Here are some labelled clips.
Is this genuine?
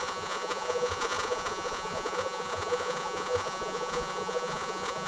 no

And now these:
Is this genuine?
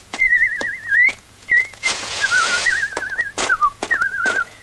no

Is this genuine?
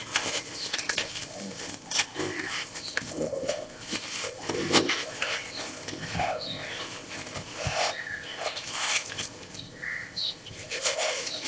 no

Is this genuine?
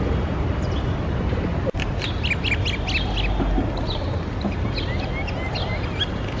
yes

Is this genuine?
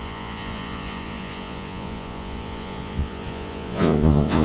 no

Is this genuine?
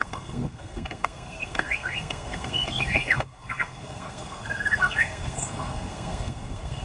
no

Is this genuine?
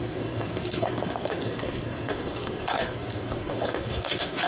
no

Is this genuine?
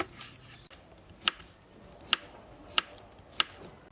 yes